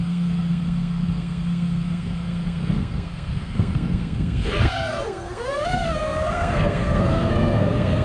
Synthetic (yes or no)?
yes